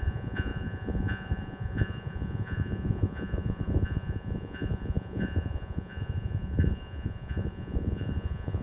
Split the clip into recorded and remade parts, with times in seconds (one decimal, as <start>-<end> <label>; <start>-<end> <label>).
0.0-8.6 remade